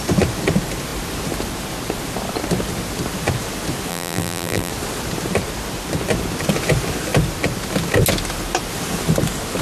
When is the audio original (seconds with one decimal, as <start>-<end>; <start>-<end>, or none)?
0.0-3.9; 4.7-9.6